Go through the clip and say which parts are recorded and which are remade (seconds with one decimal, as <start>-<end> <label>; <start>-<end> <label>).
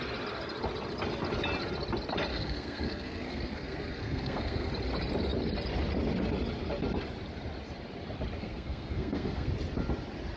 0.0-2.3 recorded; 2.3-4.7 remade; 4.7-8.4 recorded; 8.4-9.5 remade; 9.5-10.4 recorded